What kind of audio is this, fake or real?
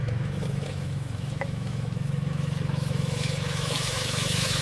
fake